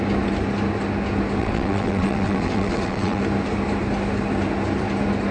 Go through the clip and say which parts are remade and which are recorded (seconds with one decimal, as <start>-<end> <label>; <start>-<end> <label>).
0.0-1.4 recorded; 1.4-3.2 remade; 3.2-5.3 recorded